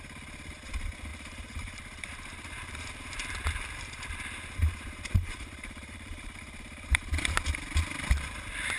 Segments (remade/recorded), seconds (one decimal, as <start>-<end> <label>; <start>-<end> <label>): 0.0-1.1 recorded; 1.1-4.1 remade; 4.1-4.6 recorded; 4.6-7.1 remade; 7.1-8.8 recorded